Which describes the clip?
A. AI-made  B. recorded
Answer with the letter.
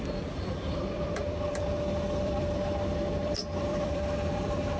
A